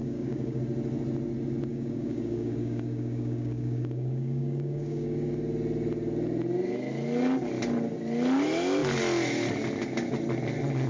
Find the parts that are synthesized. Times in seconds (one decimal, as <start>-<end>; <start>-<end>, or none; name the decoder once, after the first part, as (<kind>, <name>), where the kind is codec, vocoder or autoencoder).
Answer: 0.0-0.6 (codec, DAC); 1.7-5.3